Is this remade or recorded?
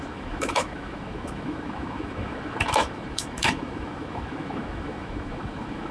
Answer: remade